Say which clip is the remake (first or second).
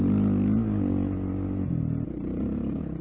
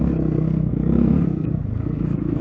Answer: second